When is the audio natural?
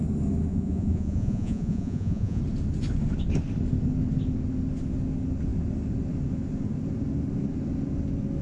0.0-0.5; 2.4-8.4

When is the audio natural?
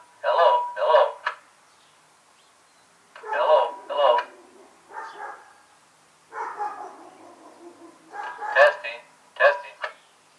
0.0-10.4